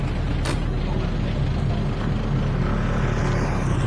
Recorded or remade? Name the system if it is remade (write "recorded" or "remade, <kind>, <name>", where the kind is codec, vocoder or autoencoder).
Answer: recorded